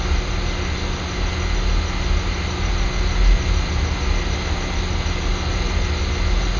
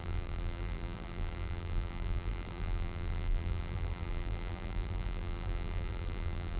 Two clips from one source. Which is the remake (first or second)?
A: second